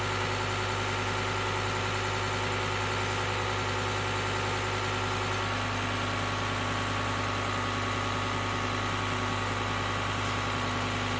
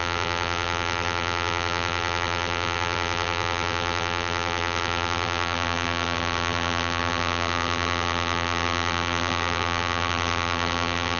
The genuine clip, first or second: first